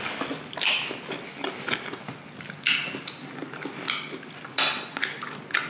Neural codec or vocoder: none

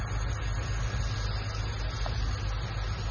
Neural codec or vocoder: none